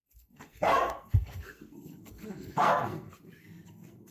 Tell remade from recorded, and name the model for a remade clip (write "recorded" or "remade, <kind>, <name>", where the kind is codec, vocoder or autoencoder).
remade, codec, SNAC